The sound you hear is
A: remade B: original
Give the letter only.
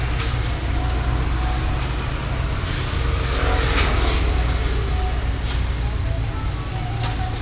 B